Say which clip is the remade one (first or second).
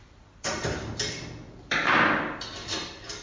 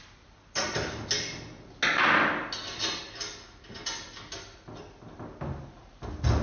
first